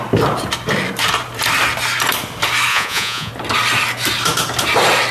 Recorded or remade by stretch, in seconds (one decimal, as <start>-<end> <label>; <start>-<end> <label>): 0.0-2.7 recorded; 2.7-3.3 remade; 3.3-5.1 recorded